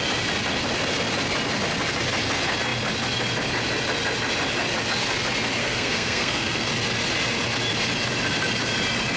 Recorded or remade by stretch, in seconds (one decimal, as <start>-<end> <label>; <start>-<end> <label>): 0.0-5.6 recorded; 5.6-6.7 remade; 6.7-9.2 recorded

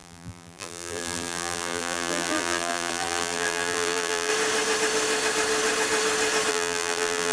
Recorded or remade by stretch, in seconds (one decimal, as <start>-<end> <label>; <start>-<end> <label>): 0.0-4.3 remade; 4.3-6.5 recorded; 6.5-7.3 remade

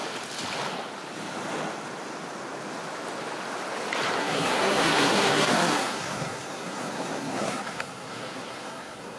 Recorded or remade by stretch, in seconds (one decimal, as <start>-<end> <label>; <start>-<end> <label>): 0.0-4.2 recorded; 4.2-9.2 remade

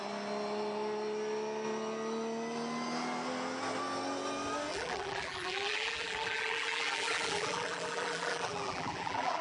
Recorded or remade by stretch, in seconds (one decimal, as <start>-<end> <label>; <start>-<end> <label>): 0.0-4.7 recorded; 4.7-9.4 remade

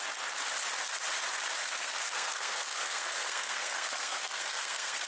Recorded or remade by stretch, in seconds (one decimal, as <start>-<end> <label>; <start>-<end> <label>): 0.0-1.6 recorded; 1.6-5.1 remade

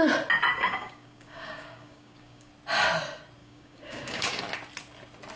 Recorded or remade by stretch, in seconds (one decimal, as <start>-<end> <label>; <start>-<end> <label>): 0.0-0.5 recorded; 0.5-2.5 remade; 2.5-3.4 recorded; 3.4-4.4 remade; 4.4-5.4 recorded